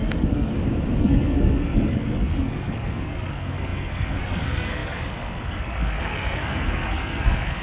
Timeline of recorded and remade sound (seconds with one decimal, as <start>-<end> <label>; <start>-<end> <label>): 0.0-0.5 remade; 0.5-1.0 recorded; 1.0-7.6 remade